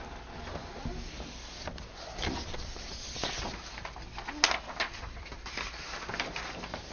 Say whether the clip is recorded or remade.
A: recorded